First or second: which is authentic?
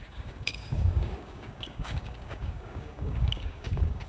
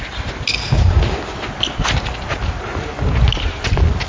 second